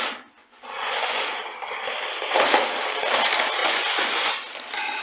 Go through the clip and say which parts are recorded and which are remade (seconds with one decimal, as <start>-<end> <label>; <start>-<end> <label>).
0.0-0.4 recorded; 0.4-1.3 remade; 1.3-3.6 recorded; 3.6-4.3 remade; 4.3-5.0 recorded